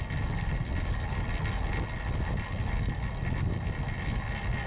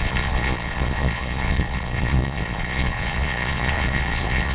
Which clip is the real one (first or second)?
first